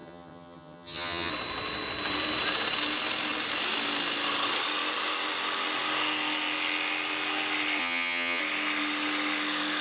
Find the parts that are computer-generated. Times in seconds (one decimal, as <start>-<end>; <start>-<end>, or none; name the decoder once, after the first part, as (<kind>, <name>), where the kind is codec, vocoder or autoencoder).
0.0-1.3 (vocoder, HiFi-GAN); 7.8-8.4